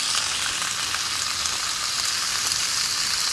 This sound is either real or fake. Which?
real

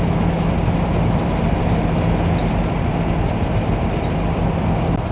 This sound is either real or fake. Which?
real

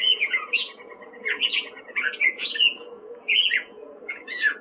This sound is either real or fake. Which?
fake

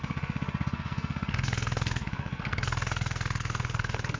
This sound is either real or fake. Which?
fake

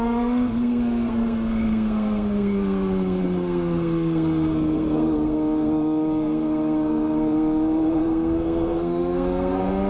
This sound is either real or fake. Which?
fake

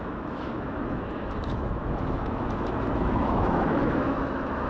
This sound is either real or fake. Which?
fake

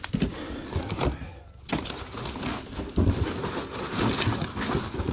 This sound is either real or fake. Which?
real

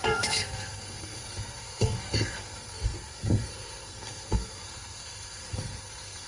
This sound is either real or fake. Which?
fake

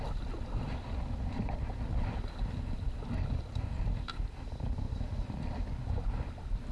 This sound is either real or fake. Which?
real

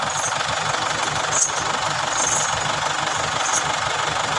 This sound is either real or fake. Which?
real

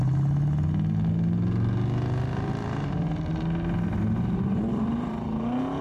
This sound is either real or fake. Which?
real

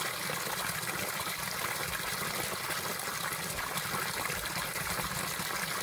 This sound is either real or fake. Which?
fake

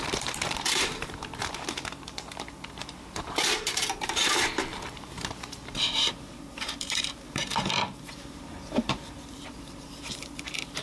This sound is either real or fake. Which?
fake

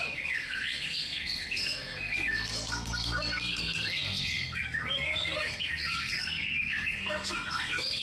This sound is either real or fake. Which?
fake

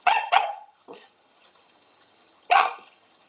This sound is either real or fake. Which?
fake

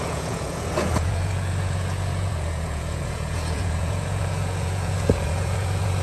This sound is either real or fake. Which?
fake